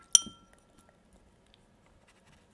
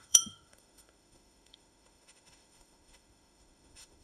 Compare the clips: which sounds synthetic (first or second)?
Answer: second